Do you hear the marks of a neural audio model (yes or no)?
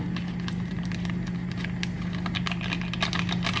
no